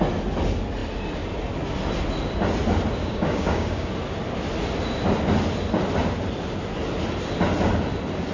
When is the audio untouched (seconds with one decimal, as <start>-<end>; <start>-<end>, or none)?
0.0-3.0; 3.9-8.3

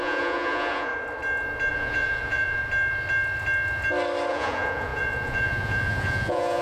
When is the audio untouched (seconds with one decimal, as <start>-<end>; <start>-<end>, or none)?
0.9-1.7; 2.6-4.3

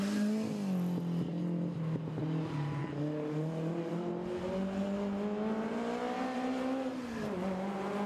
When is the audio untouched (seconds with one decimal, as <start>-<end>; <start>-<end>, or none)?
0.0-8.1